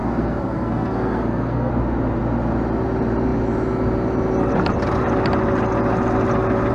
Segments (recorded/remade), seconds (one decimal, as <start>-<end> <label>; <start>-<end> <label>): 0.0-1.7 remade; 1.7-6.7 recorded

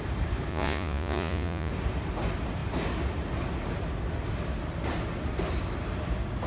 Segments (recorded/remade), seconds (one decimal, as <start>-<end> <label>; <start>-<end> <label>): 0.0-0.5 recorded; 0.5-1.7 remade; 1.7-6.5 recorded

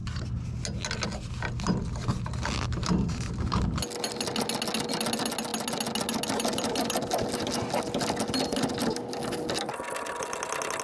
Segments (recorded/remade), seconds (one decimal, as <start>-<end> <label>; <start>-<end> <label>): 0.0-10.8 recorded

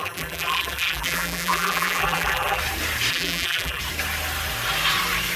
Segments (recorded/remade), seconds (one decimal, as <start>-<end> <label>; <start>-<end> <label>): 0.0-2.6 remade; 2.6-3.1 recorded; 3.1-3.8 remade; 3.8-5.4 recorded